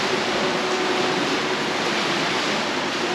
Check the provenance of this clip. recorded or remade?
recorded